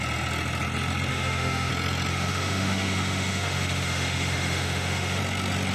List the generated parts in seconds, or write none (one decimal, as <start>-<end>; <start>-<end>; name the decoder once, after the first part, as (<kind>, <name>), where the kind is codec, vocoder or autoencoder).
1.1-1.7 (autoencoder, DAC-VAE); 2.1-5.2